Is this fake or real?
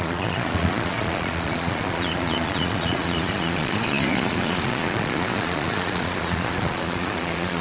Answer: fake